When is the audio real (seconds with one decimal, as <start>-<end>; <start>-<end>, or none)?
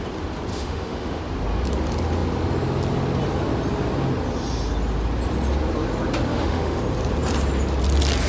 0.0-0.5; 1.2-6.3; 6.8-8.3